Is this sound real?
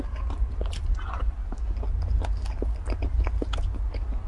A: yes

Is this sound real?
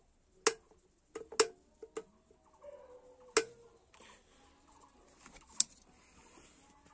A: yes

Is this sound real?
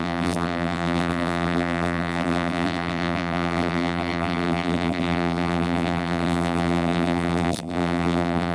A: no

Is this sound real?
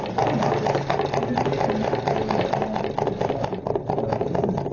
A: yes